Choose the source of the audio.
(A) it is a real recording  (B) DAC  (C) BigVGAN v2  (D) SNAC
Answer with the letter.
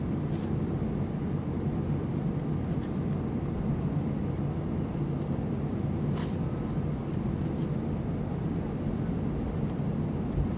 A